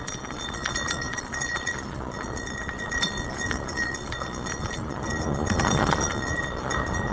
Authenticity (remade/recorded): remade